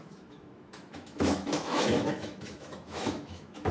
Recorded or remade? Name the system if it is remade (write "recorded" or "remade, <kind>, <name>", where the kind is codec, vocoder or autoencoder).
remade, autoencoder, DAC-VAE